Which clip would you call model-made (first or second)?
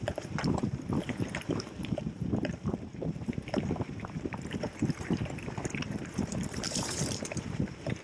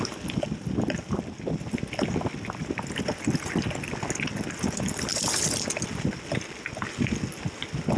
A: first